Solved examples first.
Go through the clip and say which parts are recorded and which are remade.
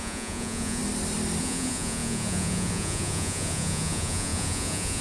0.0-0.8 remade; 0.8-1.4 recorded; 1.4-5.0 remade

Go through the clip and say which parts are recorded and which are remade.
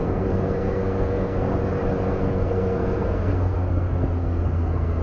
0.0-1.6 remade; 1.6-2.1 recorded; 2.1-5.0 remade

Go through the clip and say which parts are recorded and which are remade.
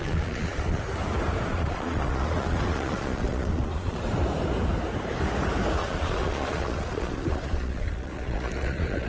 0.0-0.8 remade; 0.8-1.5 recorded; 1.5-4.0 remade; 4.0-5.8 recorded; 5.8-9.1 remade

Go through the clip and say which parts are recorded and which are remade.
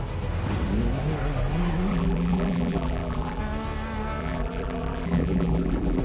0.0-1.9 recorded; 1.9-3.4 remade; 3.4-4.2 recorded; 4.2-6.0 remade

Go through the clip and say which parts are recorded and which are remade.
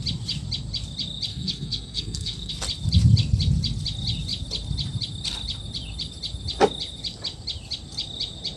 0.0-1.3 recorded; 1.3-2.5 remade; 2.5-8.6 recorded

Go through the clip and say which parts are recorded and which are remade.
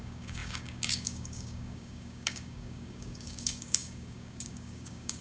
0.0-5.2 remade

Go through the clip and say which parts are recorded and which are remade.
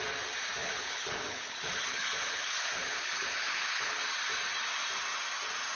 0.0-0.6 recorded; 0.6-4.0 remade; 4.0-5.7 recorded